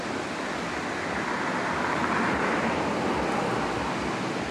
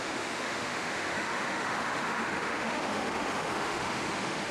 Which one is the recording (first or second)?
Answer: first